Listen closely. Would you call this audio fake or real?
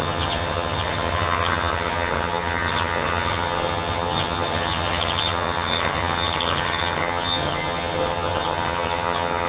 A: fake